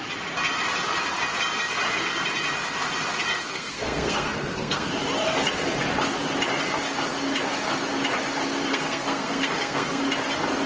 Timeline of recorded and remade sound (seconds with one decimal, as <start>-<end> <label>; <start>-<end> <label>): 0.0-3.5 recorded; 3.5-4.9 remade; 4.9-8.7 recorded; 8.7-10.0 remade; 10.0-10.7 recorded

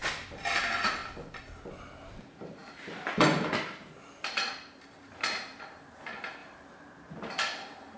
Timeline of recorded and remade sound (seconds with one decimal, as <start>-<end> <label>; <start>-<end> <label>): 0.0-1.0 remade; 1.0-1.7 recorded; 1.7-8.0 remade

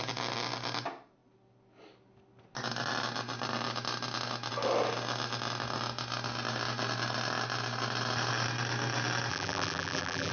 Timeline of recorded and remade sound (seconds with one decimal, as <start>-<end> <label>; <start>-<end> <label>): 0.0-9.3 recorded; 9.3-10.3 remade

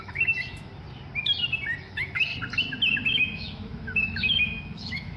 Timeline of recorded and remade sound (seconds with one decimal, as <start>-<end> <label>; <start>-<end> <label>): 0.0-0.7 remade; 0.7-1.8 recorded; 1.8-2.3 remade; 2.3-3.1 recorded; 3.1-5.2 remade

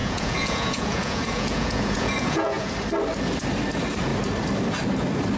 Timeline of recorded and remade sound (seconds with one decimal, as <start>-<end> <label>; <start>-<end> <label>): 0.0-2.7 remade; 2.7-5.4 recorded

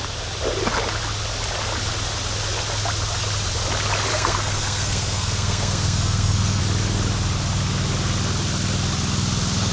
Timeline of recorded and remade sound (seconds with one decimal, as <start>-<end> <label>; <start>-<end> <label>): 0.0-4.1 recorded; 4.1-6.6 remade; 6.6-9.7 recorded